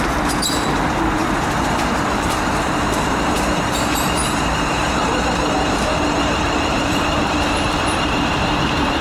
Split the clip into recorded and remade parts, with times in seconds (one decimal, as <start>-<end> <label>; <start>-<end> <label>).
0.0-9.0 remade